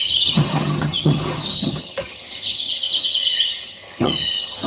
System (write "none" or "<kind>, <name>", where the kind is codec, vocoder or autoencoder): vocoder, HiFi-GAN